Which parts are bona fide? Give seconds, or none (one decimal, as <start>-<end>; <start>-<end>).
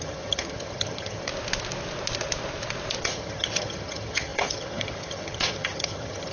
1.3-3.0